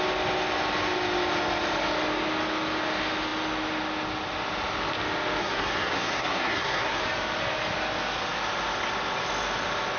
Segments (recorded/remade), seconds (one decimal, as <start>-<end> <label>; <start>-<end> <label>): 0.0-5.4 recorded; 5.4-7.0 remade; 7.0-10.0 recorded